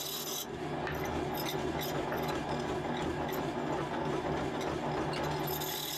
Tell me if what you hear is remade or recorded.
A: recorded